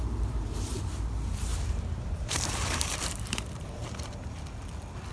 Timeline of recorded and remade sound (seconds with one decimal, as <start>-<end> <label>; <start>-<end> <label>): 0.0-1.5 recorded; 1.5-4.4 remade; 4.4-5.1 recorded